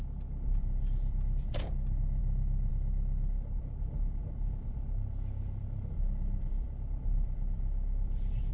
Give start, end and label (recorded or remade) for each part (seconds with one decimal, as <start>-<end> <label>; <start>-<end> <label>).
0.0-8.5 remade